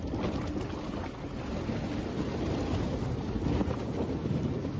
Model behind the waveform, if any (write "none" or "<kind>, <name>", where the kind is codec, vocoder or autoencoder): none